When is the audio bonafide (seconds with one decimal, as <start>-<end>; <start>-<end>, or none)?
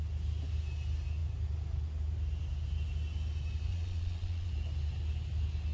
0.0-3.7; 4.5-5.7